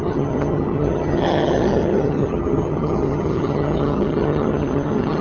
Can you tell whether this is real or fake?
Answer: fake